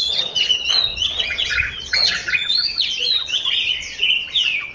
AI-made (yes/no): yes